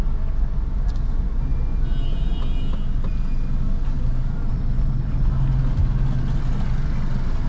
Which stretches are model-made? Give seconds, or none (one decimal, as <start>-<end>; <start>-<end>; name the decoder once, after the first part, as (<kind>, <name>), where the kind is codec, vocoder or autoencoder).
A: 4.5-5.3 (codec, HILCodec)